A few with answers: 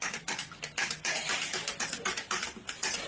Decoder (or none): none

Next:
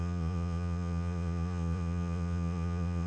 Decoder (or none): vocoder, Vocos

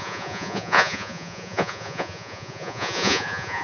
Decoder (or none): vocoder, Vocos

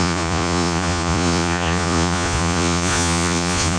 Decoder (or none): vocoder, Vocos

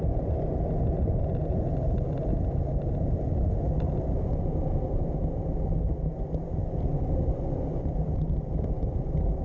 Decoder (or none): none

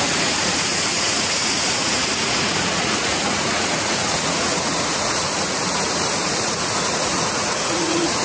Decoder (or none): vocoder, Vocos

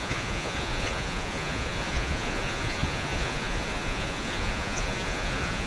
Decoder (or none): vocoder, Vocos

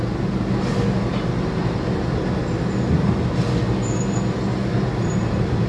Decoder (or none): none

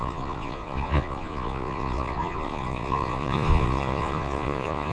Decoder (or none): vocoder, Vocos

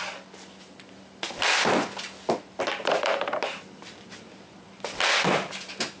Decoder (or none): none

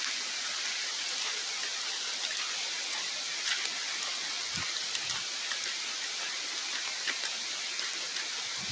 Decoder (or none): none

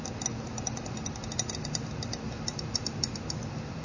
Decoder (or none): none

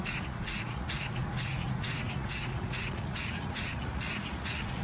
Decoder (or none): vocoder, Vocos